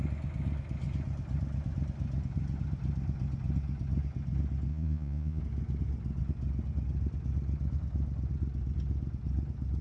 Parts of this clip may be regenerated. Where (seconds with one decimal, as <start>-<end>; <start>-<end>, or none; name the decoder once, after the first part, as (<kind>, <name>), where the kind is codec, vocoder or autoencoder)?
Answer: 4.7-5.4 (vocoder, Vocos)